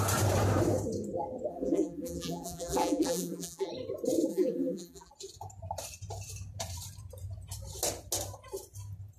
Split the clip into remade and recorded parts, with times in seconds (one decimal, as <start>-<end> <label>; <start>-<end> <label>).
0.0-1.5 recorded; 1.5-3.7 remade; 3.7-4.3 recorded; 4.3-5.1 remade; 5.1-9.2 recorded